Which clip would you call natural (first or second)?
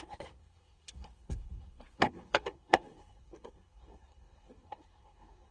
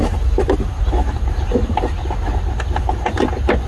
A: second